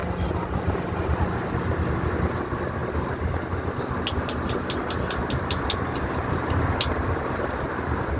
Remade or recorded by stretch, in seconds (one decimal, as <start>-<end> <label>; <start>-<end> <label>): 0.0-8.2 recorded

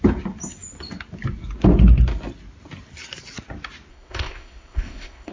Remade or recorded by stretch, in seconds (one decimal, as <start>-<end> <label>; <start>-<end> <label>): 0.0-3.9 recorded; 3.9-5.3 remade

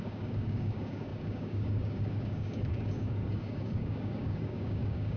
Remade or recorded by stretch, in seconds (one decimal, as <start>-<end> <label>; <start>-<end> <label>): 0.0-5.2 remade